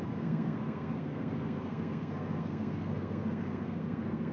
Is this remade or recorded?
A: remade